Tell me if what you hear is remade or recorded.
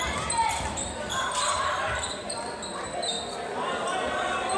recorded